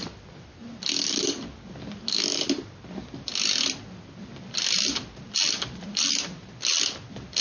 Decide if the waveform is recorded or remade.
recorded